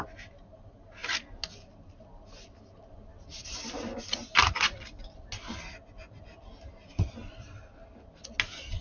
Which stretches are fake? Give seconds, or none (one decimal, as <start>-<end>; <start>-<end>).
none